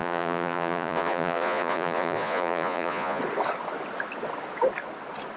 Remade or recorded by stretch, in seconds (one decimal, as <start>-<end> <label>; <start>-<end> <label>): 0.0-3.2 remade; 3.2-5.4 recorded

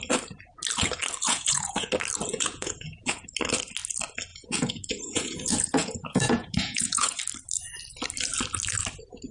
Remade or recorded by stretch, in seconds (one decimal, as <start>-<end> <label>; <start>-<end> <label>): 0.0-1.2 recorded; 1.2-1.9 remade; 1.9-2.3 recorded; 2.3-3.3 remade; 3.3-4.3 recorded; 4.3-7.2 remade; 7.2-9.3 recorded